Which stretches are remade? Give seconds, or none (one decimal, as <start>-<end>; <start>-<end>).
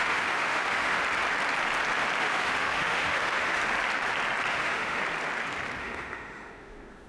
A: 0.0-1.0; 2.2-3.6; 4.5-5.0; 5.8-7.1